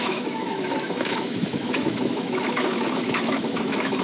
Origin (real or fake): fake